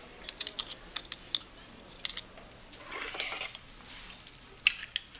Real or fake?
real